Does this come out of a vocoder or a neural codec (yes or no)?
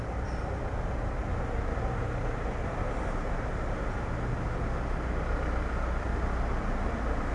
no